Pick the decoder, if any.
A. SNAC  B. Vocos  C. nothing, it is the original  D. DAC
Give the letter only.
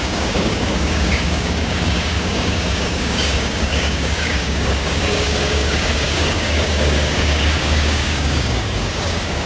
D